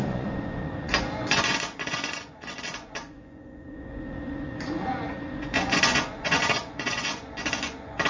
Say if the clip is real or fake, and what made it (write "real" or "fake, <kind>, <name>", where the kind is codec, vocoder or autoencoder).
fake, vocoder, Vocos